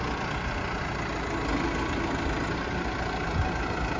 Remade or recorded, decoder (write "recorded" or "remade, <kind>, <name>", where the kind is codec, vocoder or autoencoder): recorded